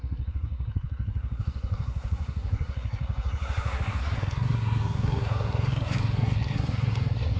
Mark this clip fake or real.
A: fake